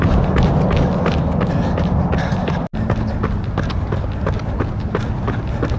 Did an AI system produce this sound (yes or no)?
no